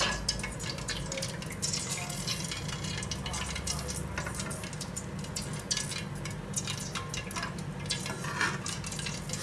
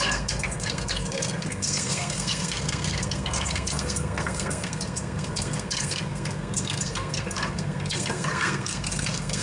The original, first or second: first